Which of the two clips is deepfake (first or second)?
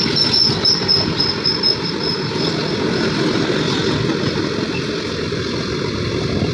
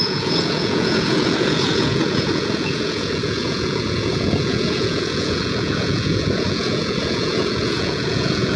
second